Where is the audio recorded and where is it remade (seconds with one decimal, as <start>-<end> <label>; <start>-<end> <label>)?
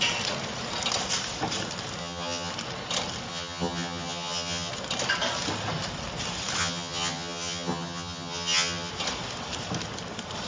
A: 0.0-2.0 recorded; 2.0-2.5 remade; 2.5-3.3 recorded; 3.3-4.7 remade; 4.7-6.6 recorded; 6.6-8.9 remade; 8.9-10.5 recorded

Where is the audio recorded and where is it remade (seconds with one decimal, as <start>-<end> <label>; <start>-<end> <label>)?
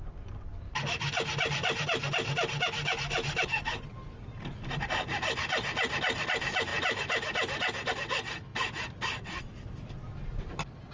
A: 0.0-10.9 recorded